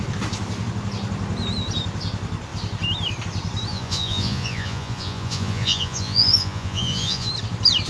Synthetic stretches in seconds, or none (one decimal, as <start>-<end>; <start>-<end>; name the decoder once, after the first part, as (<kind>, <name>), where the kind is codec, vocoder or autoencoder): 3.7-7.3 (vocoder, Vocos)